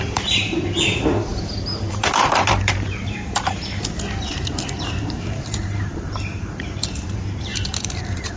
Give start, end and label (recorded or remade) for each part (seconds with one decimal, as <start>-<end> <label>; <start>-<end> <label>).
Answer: 0.0-3.6 remade; 3.6-4.3 recorded; 4.3-8.4 remade